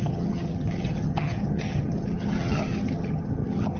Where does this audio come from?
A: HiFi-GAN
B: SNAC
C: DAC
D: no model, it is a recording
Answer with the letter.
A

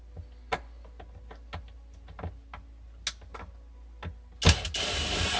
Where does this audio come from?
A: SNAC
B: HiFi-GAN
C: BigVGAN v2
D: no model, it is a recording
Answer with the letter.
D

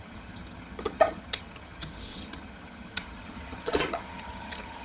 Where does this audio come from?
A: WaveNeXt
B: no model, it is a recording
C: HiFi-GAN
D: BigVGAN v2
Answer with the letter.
C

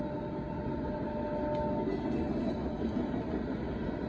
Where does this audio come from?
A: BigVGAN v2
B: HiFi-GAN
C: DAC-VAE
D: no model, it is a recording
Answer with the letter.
D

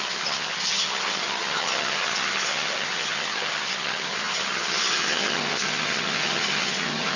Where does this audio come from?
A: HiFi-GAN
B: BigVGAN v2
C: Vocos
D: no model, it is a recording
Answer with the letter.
A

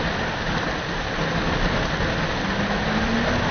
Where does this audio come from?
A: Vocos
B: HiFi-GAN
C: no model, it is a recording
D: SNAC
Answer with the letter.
C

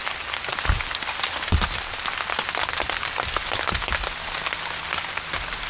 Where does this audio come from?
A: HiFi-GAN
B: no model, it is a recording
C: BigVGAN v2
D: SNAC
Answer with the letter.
B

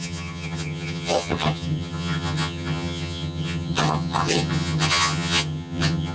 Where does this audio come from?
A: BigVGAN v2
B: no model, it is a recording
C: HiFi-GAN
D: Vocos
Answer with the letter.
C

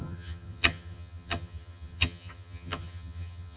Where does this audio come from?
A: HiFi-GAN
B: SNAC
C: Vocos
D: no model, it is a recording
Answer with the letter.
A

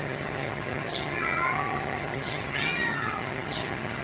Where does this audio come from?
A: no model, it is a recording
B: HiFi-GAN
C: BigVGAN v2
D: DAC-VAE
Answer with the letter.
B